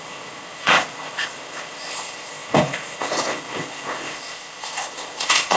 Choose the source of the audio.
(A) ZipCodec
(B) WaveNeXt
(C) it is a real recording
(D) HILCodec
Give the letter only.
A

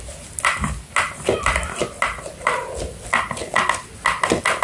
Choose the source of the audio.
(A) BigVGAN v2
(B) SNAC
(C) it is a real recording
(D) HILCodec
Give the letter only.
C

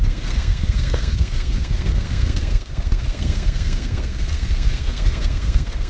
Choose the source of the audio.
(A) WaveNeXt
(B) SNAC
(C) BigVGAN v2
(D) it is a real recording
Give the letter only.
B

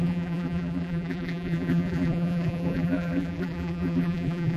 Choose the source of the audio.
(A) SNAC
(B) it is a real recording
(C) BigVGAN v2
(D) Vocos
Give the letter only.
C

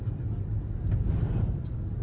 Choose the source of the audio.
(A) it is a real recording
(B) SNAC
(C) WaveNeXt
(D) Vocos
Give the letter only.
A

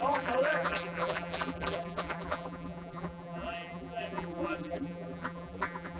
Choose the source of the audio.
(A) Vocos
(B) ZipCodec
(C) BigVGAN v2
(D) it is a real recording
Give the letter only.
C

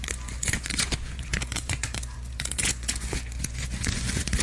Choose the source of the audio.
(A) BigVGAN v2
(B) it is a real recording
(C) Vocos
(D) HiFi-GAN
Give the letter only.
C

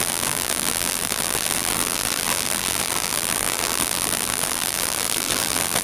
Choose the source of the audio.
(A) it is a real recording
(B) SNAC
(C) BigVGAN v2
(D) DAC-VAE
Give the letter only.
C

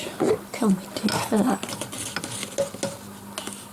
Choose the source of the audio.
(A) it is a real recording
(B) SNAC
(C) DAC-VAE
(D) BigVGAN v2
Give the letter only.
A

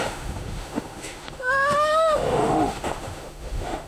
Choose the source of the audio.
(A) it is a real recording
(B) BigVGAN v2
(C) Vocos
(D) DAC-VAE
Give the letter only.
D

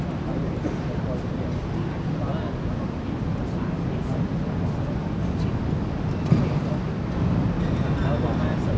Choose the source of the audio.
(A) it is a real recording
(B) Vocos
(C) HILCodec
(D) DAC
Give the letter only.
A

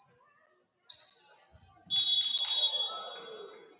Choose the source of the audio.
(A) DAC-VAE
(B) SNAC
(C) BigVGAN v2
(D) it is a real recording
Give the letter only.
D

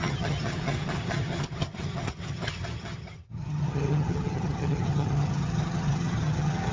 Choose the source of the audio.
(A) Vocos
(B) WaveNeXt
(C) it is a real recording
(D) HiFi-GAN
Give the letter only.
D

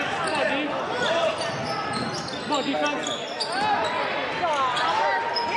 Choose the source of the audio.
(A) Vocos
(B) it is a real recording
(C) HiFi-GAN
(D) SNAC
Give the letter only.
B